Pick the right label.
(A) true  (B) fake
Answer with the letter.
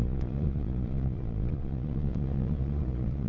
B